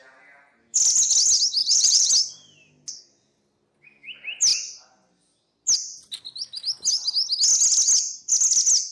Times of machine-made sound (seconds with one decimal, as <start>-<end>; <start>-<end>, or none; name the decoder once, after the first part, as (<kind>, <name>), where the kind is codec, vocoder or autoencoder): 1.6-2.1 (vocoder, Vocos)